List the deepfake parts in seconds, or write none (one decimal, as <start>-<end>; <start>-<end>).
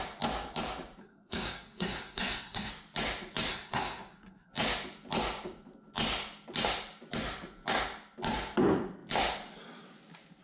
1.0-2.7; 3.5-4.5